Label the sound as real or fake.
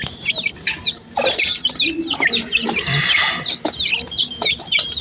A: real